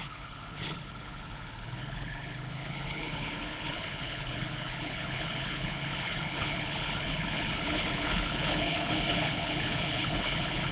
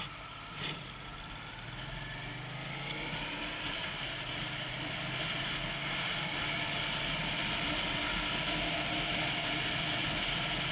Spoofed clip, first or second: first